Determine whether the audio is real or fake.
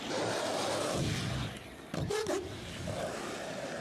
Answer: real